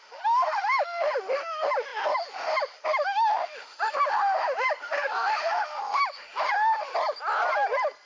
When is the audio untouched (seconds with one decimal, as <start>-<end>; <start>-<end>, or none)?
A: 6.9-8.1